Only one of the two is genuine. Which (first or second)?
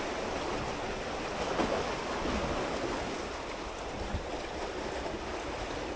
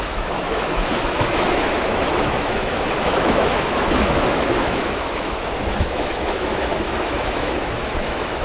first